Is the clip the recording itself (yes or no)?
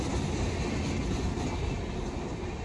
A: yes